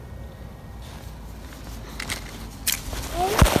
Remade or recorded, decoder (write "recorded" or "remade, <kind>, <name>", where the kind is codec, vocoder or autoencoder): recorded